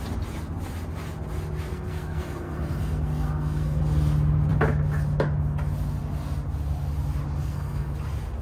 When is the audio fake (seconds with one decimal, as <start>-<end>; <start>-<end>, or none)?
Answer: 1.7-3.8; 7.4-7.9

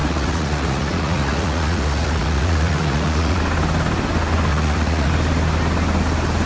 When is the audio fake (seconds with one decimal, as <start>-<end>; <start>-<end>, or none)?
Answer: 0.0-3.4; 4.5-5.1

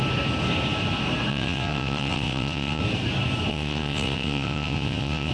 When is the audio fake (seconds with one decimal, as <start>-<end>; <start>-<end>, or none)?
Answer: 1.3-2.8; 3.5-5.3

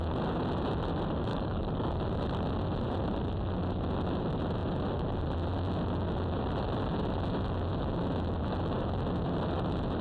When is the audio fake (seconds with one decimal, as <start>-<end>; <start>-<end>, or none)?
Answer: 1.3-1.9

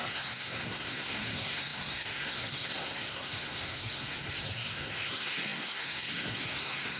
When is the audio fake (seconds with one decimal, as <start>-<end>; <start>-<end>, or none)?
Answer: 0.0-7.0

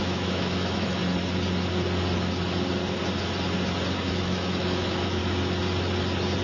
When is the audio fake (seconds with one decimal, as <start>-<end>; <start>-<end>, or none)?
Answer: 0.0-1.0; 4.1-5.2

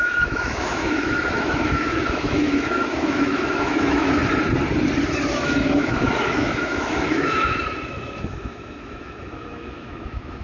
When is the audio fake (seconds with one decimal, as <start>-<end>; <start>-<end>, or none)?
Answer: 0.0-4.2; 5.3-10.4